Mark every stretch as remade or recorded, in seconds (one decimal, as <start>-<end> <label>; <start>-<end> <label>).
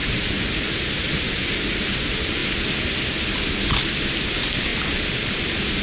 0.0-2.4 remade; 2.4-4.3 recorded; 4.3-5.8 remade